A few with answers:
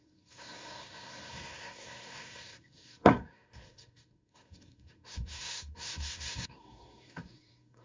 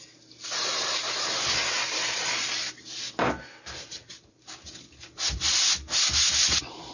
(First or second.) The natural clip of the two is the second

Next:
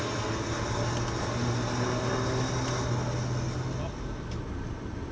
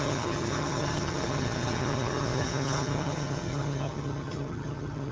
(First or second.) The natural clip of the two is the first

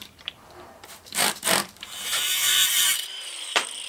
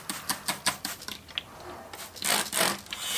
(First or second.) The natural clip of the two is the second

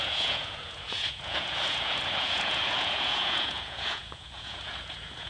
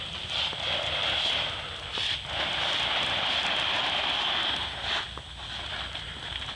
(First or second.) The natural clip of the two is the second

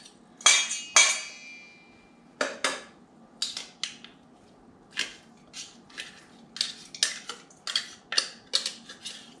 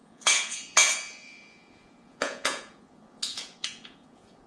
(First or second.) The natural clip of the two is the first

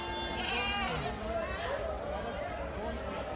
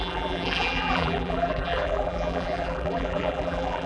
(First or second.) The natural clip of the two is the first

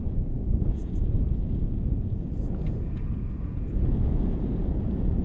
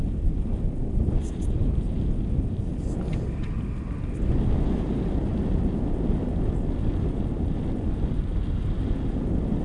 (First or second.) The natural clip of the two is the second